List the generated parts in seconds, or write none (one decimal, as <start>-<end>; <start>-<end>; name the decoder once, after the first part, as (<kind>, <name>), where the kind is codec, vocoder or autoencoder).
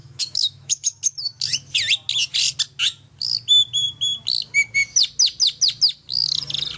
0.0-1.7 (autoencoder, DAC-VAE)